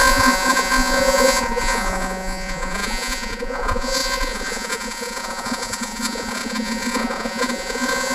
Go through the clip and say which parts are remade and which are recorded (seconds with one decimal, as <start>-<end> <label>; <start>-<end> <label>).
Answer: 0.0-8.1 remade